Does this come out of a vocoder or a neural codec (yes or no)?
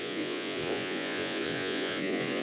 yes